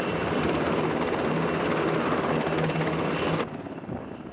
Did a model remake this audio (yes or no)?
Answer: no